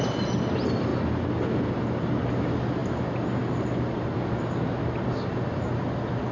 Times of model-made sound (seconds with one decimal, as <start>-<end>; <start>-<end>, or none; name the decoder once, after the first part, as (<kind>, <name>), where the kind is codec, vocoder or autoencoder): none

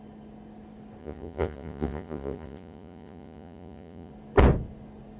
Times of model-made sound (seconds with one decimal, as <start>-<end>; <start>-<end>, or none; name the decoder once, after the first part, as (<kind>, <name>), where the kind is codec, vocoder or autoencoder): 1.0-4.1 (vocoder, Vocos)